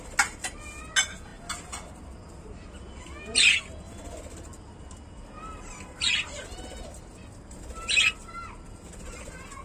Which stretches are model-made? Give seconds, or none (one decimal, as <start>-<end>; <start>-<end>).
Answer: none